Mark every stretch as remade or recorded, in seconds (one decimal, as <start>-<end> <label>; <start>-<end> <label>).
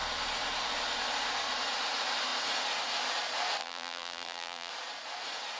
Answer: 0.0-3.6 recorded; 3.6-4.7 remade; 4.7-5.6 recorded